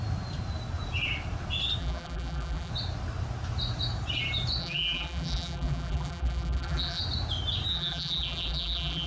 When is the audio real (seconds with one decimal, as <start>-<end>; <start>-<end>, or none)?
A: 0.0-1.8; 2.7-4.6; 7.0-7.7